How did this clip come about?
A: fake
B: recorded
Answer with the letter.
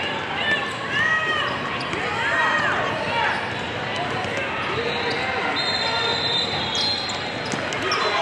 B